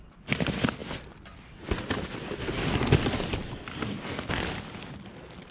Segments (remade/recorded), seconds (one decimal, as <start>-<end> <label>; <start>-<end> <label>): 0.0-5.5 recorded